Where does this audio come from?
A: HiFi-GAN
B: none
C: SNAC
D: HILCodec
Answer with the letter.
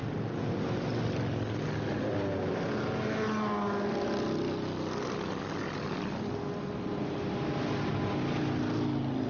B